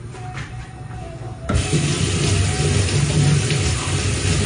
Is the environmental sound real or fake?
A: real